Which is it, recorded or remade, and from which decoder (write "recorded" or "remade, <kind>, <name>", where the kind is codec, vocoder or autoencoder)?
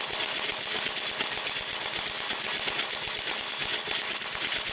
recorded